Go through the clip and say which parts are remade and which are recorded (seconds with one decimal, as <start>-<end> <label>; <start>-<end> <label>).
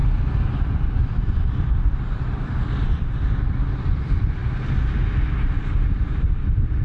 0.0-0.6 recorded; 0.6-4.4 remade; 4.4-6.3 recorded; 6.3-6.8 remade